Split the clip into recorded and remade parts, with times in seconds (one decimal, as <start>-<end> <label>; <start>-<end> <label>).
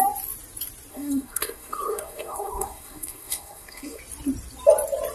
0.0-0.9 recorded; 0.9-4.0 remade; 4.0-5.1 recorded